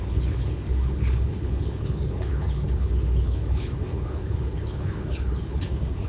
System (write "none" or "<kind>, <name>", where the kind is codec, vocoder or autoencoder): codec, HILCodec